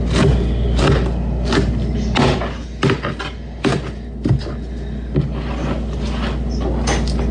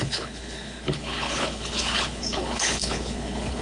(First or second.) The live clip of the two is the first